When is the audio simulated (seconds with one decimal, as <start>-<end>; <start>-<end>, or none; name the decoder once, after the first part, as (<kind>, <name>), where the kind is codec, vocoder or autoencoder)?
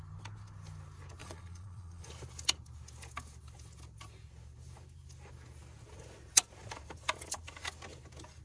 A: 1.2-2.1 (vocoder, Vocos)